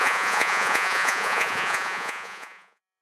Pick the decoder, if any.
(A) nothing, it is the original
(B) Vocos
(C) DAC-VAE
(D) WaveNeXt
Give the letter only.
B